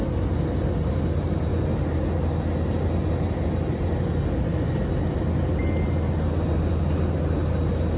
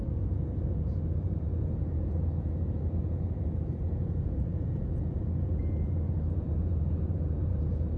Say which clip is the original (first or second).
first